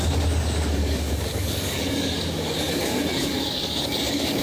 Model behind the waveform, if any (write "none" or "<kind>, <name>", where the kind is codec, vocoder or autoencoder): codec, DAC